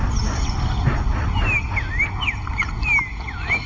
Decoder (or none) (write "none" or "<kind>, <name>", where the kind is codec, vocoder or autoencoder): none